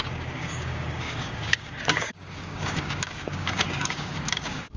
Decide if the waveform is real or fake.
fake